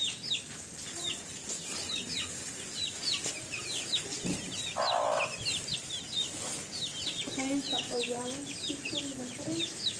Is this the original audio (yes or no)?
yes